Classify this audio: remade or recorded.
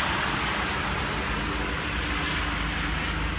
recorded